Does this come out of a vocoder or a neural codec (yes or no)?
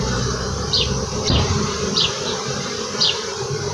yes